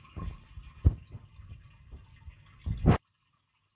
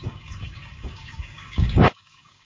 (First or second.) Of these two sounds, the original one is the first